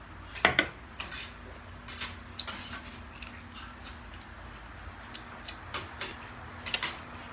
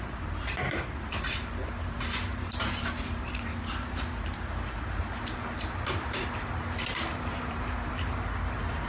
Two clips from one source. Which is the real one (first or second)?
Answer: first